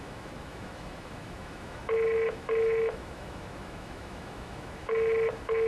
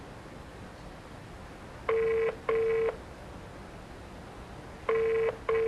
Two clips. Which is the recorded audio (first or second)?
second